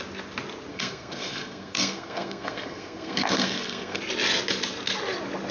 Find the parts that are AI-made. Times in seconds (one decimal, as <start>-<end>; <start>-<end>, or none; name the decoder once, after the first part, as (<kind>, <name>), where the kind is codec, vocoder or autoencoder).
0.7-4.0 (codec, SNAC)